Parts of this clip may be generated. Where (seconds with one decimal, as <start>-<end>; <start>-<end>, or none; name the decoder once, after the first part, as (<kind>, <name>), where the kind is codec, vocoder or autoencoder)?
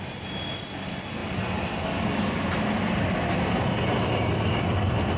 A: none